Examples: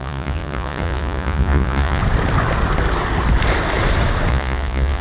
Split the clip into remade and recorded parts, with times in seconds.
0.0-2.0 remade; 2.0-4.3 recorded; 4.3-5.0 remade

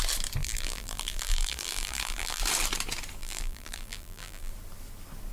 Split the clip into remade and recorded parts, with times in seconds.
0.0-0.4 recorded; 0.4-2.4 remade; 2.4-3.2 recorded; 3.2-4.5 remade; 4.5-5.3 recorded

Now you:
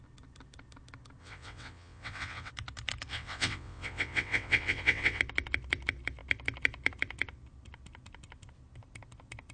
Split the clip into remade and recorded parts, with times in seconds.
0.0-1.2 recorded; 1.2-2.5 remade; 2.5-3.1 recorded; 3.1-5.2 remade; 5.2-9.5 recorded